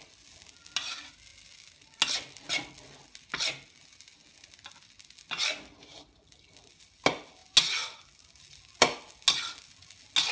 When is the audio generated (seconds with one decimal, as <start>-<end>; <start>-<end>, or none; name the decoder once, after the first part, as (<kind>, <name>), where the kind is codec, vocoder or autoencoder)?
none